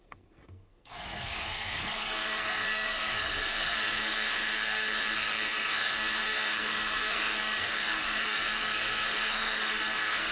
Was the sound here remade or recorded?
remade